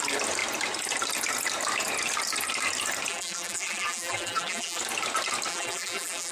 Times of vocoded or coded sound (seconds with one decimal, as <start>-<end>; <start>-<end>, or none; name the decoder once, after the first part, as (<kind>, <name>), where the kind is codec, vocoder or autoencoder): 3.1-4.8 (vocoder, BigVGAN v2); 5.5-6.3